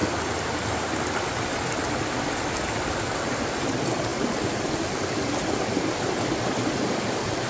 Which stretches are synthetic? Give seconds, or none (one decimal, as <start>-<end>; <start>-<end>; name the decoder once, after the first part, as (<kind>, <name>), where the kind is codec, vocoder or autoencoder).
none